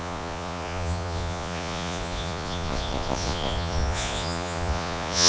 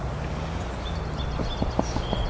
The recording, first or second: second